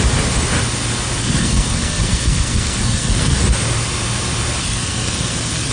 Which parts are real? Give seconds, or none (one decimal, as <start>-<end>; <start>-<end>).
0.0-1.2; 3.4-4.6